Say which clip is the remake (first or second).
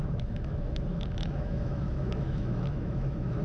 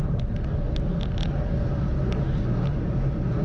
first